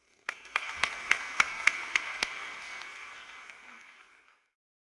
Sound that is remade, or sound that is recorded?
remade